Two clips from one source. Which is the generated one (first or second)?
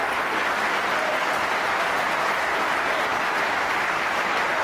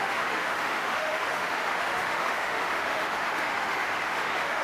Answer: second